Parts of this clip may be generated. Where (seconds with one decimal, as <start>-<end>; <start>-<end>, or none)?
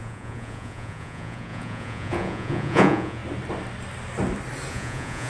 0.0-3.2; 4.7-5.3